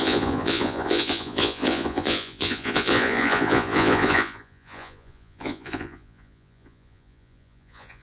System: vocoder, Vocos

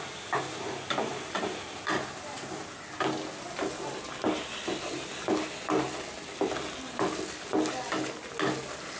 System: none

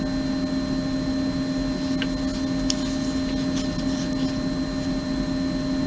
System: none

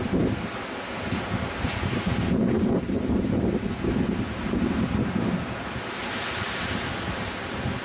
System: none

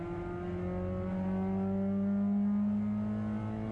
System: none